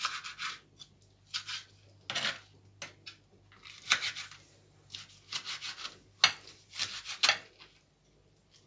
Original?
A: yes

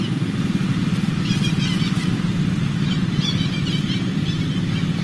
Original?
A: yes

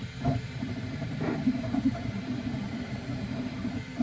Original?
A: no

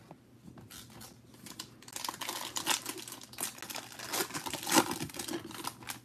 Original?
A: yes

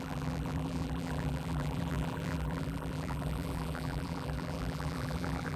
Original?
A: no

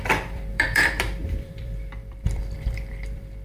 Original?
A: no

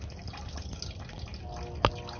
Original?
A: yes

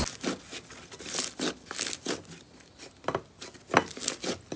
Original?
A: yes